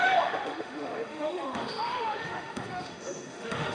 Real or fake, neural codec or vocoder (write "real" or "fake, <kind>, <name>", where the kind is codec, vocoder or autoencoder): fake, autoencoder, DAC-VAE